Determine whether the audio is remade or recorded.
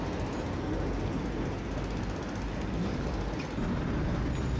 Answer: recorded